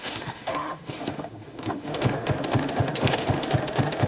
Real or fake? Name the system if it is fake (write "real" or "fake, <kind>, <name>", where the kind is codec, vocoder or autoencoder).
fake, autoencoder, DAC-VAE